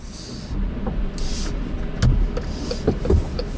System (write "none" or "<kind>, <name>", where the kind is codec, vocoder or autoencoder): none